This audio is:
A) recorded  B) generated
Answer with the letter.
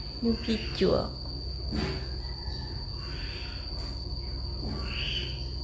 A